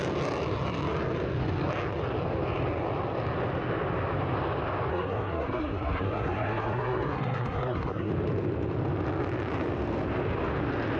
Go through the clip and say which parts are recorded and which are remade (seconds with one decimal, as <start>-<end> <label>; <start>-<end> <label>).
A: 0.0-4.9 recorded; 4.9-8.1 remade; 8.1-11.0 recorded